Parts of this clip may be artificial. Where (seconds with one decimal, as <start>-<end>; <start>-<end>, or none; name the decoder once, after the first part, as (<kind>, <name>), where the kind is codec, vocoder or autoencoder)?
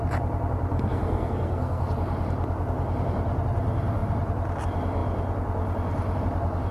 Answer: 0.7-1.9 (codec, SNAC)